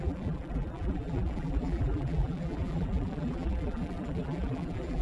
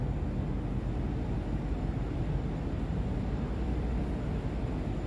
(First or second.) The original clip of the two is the second